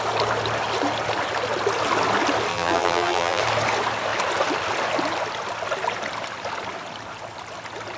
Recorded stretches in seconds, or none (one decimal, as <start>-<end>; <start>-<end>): 0.0-2.5; 3.4-8.0